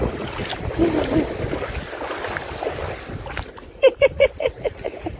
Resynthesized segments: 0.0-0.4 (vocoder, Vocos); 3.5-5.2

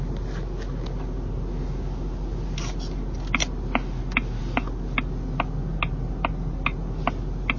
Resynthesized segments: none

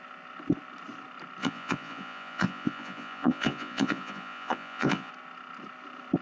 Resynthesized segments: 1.4-5.1 (vocoder, Vocos)

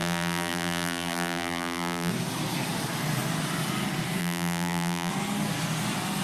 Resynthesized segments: 0.0-2.1 (vocoder, BigVGAN v2); 4.2-5.1